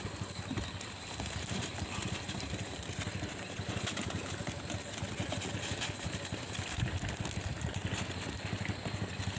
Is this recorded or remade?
recorded